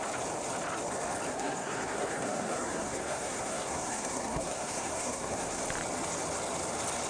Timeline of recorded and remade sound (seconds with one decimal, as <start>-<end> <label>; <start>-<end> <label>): 0.0-1.3 recorded; 1.3-5.6 remade; 5.6-7.1 recorded